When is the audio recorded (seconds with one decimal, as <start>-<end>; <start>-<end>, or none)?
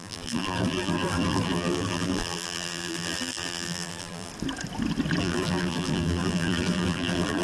4.3-5.2